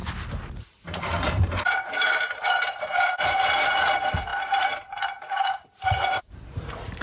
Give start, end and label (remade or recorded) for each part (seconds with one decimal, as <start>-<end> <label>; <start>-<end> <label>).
0.0-0.6 recorded; 0.6-7.0 remade